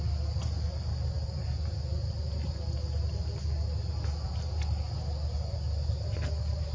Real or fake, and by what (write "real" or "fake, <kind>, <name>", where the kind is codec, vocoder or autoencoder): real